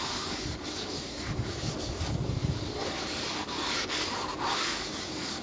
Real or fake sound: fake